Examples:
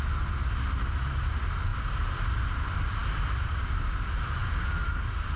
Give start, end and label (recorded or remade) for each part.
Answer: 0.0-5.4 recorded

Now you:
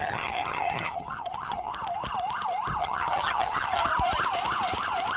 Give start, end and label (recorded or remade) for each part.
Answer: 0.0-1.7 remade; 1.7-2.8 recorded; 2.8-3.9 remade; 3.9-5.2 recorded

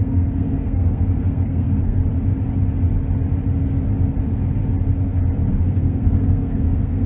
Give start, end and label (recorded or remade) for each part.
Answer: 0.0-2.0 remade; 2.0-5.5 recorded; 5.5-7.1 remade

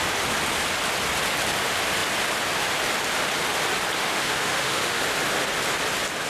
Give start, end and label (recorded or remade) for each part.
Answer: 0.0-4.0 recorded; 4.0-5.0 remade; 5.0-6.3 recorded

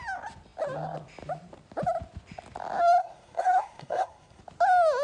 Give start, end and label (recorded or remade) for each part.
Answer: 0.0-3.0 recorded; 3.0-4.4 remade; 4.4-5.0 recorded

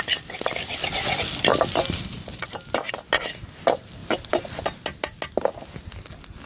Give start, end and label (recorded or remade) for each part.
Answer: 0.0-4.0 recorded; 4.0-4.6 remade; 4.6-6.5 recorded